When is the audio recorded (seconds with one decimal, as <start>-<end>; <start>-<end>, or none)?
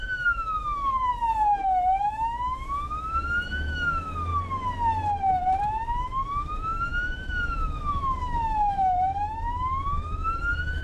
1.1-2.0; 4.3-5.6